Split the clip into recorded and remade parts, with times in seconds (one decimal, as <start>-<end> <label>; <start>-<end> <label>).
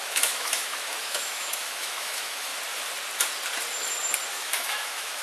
0.0-2.5 remade; 2.5-4.3 recorded; 4.3-5.2 remade